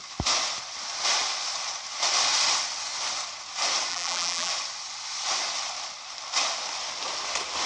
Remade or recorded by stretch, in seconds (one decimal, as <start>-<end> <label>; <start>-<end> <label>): 0.0-3.9 recorded; 3.9-4.5 remade; 4.5-7.7 recorded

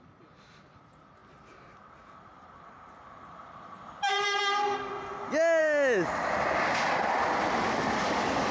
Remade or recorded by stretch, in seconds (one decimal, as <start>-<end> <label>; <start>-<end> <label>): 0.0-1.2 recorded; 1.2-4.4 remade; 4.4-5.6 recorded; 5.6-7.5 remade; 7.5-8.5 recorded

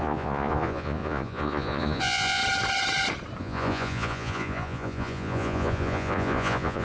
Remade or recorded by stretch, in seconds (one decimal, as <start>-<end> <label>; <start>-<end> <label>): 0.0-2.4 remade; 2.4-3.4 recorded; 3.4-6.8 remade

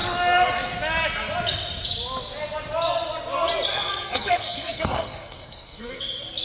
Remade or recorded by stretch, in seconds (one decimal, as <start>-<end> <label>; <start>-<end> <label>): 0.0-3.7 recorded; 3.7-6.0 remade; 6.0-6.4 recorded

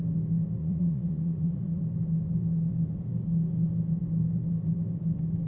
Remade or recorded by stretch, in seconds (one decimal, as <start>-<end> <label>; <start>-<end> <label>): 0.0-0.6 recorded; 0.6-1.8 remade; 1.8-5.5 recorded

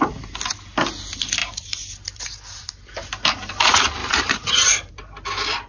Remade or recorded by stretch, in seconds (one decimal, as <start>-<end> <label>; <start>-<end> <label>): 0.0-4.0 recorded; 4.0-4.9 remade; 4.9-5.7 recorded

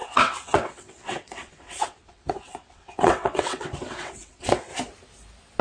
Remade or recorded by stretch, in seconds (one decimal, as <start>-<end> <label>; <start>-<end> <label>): 0.0-4.7 remade; 4.7-5.6 recorded